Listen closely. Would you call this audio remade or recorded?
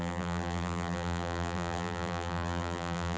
remade